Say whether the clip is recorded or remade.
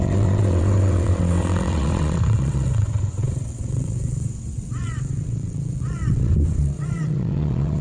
remade